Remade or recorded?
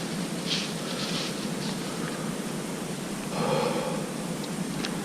recorded